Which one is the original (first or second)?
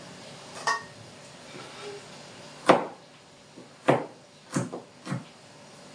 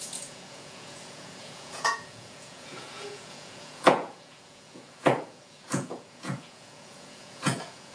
first